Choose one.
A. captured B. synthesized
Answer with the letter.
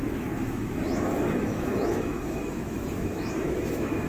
B